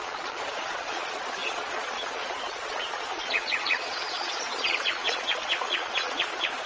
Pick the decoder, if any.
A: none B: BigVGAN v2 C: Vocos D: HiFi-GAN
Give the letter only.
C